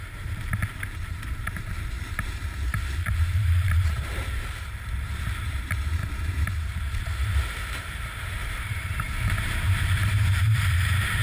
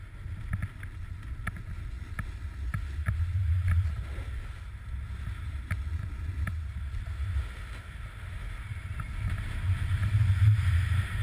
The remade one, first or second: first